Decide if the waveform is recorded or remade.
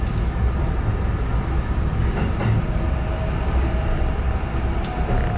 recorded